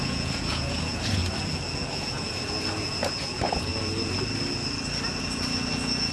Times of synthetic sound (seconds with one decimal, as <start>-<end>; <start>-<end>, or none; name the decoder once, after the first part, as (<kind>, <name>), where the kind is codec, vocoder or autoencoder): 0.0-1.2 (vocoder, Vocos); 1.9-3.7; 5.2-6.1